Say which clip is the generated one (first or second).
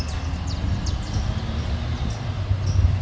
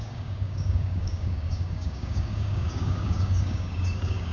second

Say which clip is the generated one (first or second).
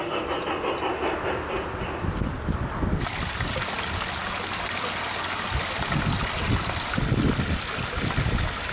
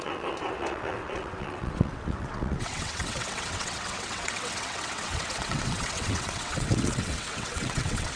second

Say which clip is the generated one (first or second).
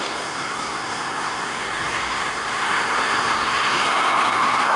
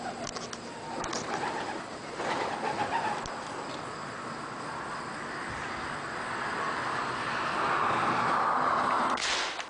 first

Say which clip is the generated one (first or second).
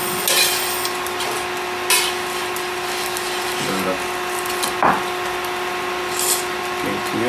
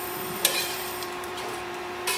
second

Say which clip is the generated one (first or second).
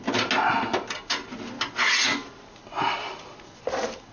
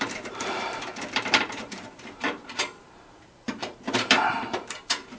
second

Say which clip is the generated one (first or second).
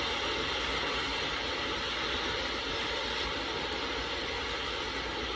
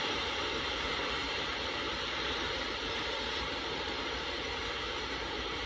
second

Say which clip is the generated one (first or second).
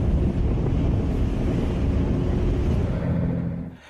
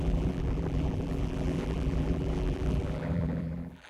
second